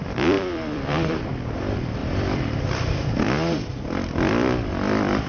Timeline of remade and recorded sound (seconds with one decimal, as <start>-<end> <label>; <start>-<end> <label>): 0.0-1.3 remade; 1.3-2.0 recorded; 2.0-3.1 remade; 3.1-3.7 recorded; 3.7-5.3 remade